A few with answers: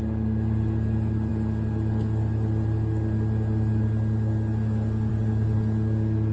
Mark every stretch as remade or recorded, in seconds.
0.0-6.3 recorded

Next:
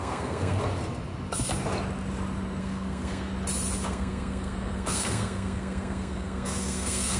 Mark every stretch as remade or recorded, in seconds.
0.0-0.6 remade; 0.6-2.6 recorded; 2.6-3.3 remade; 3.3-3.9 recorded; 3.9-7.2 remade

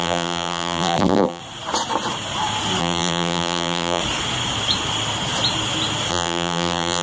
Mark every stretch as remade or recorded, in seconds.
0.0-1.4 remade; 1.4-2.8 recorded; 2.8-4.0 remade; 4.0-6.1 recorded; 6.1-7.0 remade

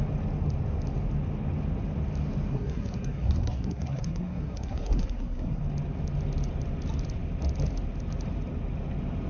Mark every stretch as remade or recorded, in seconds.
0.0-2.5 recorded; 2.5-5.6 remade; 5.6-9.3 recorded